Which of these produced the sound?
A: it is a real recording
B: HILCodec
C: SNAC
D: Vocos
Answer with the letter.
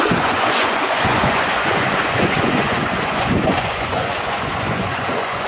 D